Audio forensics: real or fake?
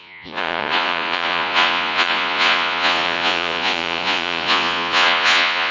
fake